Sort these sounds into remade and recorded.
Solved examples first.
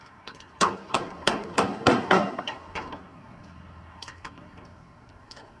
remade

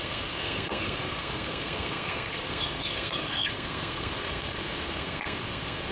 remade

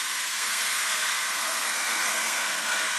remade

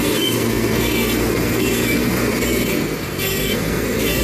remade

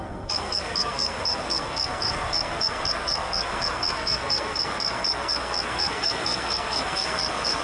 remade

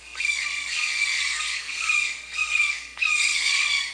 remade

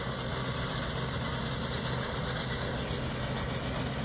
recorded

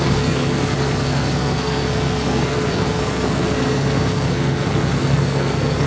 remade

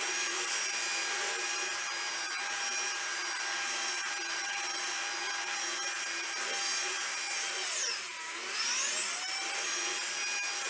recorded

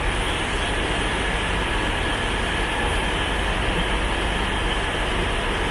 recorded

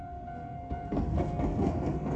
remade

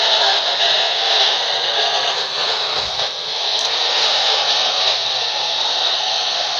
remade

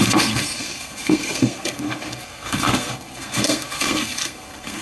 remade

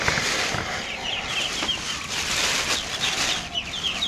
recorded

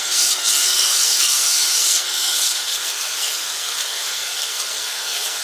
remade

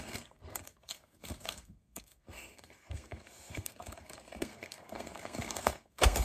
remade